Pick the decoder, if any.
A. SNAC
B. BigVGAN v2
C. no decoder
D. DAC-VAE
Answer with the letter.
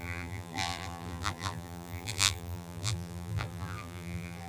B